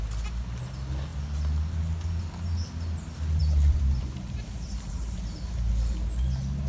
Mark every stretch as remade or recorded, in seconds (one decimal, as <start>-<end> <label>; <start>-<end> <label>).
0.0-3.4 recorded; 3.4-5.7 remade; 5.7-6.7 recorded